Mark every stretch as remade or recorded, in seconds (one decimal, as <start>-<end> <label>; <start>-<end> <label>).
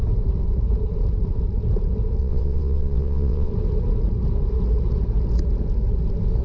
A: 0.0-2.2 recorded; 2.2-3.5 remade; 3.5-6.4 recorded